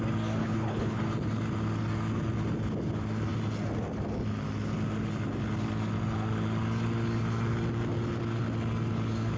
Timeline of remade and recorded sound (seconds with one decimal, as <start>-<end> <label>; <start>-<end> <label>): 0.0-0.4 recorded; 0.4-1.0 remade; 1.0-9.4 recorded